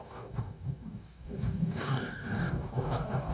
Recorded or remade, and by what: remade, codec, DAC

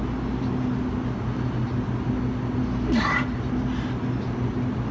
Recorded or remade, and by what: recorded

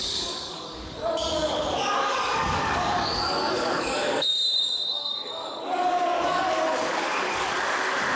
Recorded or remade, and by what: remade, codec, DAC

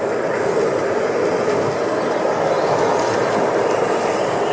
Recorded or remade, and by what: recorded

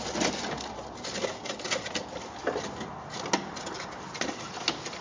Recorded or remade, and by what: recorded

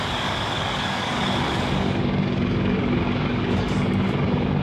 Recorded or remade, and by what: remade, codec, DAC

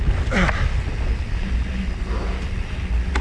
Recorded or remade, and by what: recorded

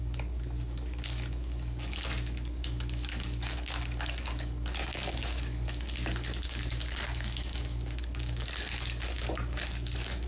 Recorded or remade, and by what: remade, codec, DAC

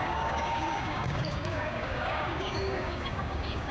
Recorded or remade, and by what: remade, codec, DAC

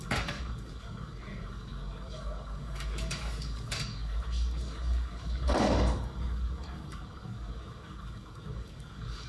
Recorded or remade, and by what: remade, codec, DAC